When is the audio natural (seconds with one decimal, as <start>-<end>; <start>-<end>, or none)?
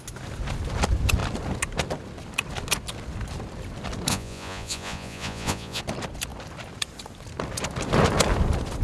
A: 0.0-4.1; 5.8-8.8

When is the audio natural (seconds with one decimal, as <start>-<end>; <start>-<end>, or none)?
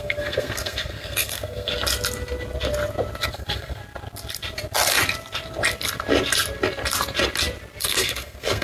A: 1.7-3.3; 3.8-7.8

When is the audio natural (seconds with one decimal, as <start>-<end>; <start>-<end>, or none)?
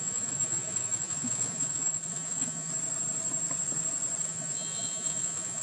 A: 2.7-4.2